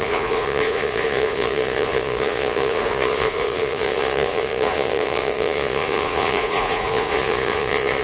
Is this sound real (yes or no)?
no